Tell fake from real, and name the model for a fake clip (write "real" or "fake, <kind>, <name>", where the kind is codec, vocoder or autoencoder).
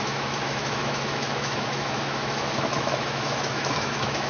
fake, autoencoder, DAC-VAE